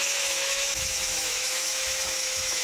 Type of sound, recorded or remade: remade